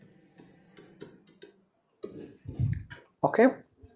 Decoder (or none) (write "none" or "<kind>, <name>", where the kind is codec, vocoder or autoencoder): none